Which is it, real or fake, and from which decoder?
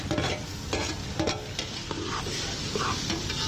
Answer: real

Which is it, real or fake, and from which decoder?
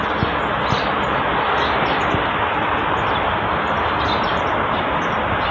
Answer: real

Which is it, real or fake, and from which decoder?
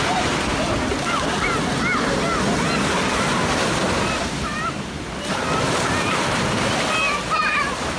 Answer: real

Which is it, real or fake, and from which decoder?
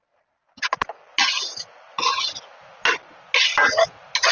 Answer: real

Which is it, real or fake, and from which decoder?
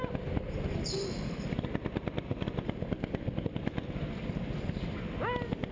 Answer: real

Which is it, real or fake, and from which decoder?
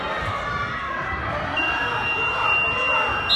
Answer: real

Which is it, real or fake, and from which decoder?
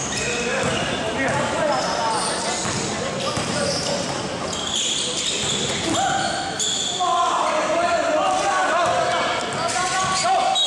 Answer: real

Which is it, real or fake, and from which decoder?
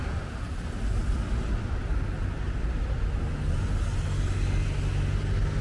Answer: real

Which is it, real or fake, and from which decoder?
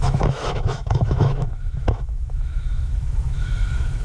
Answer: fake, autoencoder, DAC-VAE